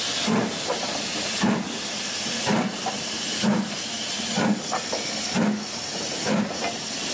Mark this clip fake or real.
real